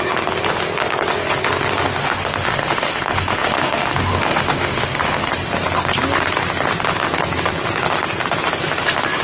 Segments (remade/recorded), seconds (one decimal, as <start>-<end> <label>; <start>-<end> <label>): 0.0-2.0 recorded; 2.0-5.3 remade; 5.3-9.2 recorded